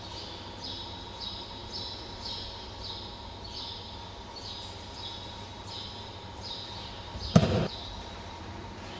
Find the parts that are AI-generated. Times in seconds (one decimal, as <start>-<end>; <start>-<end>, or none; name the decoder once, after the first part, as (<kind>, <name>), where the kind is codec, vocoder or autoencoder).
none